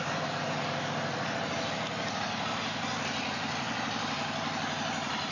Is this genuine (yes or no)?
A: no